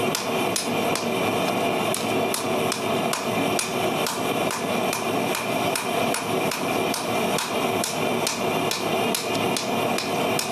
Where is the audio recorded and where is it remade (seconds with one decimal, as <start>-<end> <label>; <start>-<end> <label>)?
0.0-3.7 recorded; 3.7-8.0 remade; 8.0-10.5 recorded